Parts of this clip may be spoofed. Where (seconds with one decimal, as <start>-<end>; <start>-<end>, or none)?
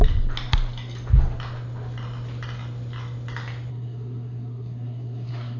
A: 3.7-5.6